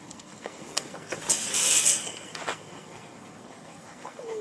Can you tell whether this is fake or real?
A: fake